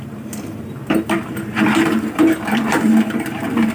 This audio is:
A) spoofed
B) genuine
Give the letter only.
A